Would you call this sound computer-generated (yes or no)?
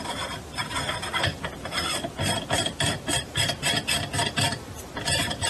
yes